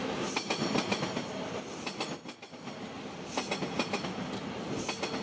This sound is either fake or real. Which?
real